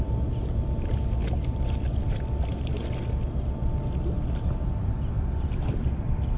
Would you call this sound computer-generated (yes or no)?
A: no